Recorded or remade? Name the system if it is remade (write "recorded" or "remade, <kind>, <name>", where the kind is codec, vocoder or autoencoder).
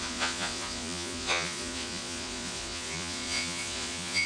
remade, vocoder, Vocos